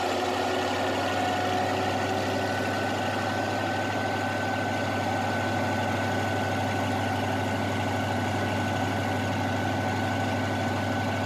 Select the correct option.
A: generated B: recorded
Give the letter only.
B